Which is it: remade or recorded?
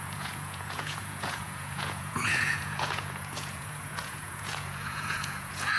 remade